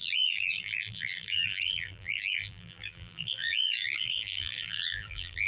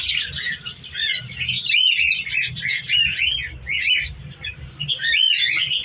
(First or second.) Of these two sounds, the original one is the second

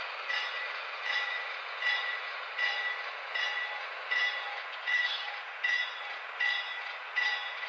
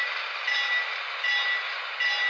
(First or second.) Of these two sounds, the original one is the second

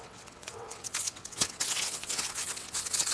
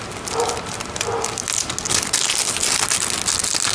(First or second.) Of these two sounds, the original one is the second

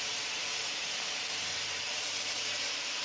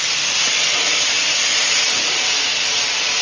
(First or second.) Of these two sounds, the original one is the second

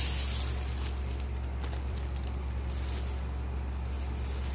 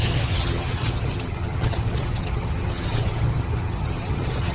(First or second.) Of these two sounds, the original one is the first